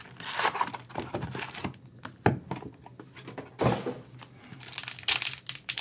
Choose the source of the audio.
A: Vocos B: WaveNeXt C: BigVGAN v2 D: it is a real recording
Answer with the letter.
D